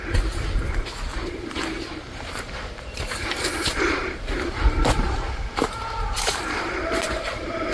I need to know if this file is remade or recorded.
remade